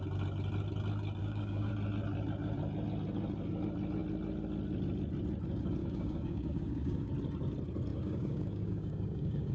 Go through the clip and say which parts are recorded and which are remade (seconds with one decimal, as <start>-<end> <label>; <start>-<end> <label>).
0.0-1.2 recorded; 1.2-1.7 remade; 1.7-5.8 recorded; 5.8-7.1 remade; 7.1-7.9 recorded; 7.9-9.5 remade